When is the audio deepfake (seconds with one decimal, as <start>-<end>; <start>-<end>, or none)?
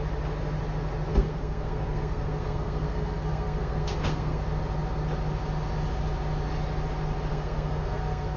1.1-4.4; 7.3-8.4